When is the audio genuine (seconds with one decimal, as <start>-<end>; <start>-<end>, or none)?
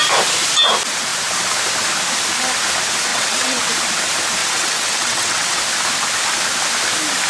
0.0-3.1; 3.6-4.4; 5.6-7.3